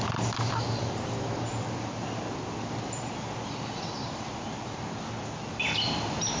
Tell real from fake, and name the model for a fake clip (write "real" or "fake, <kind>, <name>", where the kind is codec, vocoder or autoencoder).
real